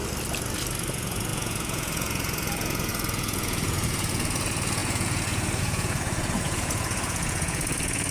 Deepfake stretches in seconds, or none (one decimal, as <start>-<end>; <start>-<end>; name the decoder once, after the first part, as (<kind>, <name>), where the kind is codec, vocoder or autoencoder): 0.9-8.1 (vocoder, Vocos)

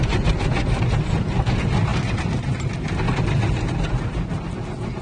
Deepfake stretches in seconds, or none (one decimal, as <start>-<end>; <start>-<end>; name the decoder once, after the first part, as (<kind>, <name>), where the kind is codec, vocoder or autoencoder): none

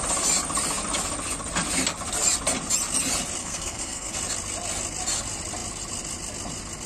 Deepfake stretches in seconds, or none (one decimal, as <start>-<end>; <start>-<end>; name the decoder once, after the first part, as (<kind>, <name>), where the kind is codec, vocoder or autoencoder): 3.4-4.1 (codec, SNAC)